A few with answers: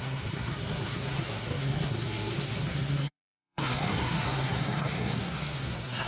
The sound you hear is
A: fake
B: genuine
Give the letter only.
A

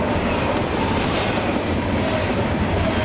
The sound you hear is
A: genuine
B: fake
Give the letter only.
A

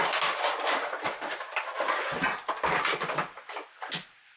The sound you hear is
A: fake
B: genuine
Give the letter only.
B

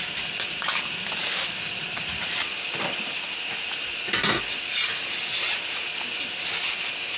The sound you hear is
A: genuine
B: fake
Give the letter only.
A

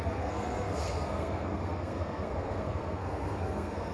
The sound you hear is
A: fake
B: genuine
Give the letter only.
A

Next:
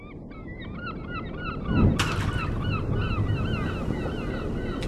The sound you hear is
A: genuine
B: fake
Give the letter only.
A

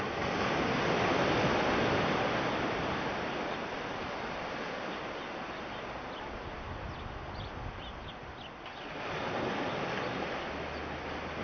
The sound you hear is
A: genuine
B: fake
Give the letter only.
A